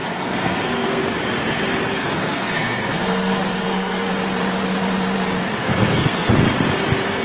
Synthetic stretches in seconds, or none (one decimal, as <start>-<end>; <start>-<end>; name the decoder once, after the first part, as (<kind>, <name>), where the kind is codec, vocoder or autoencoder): 0.0-1.0 (codec, SNAC); 2.0-4.1; 5.6-6.3